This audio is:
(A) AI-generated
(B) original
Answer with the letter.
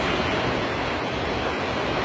B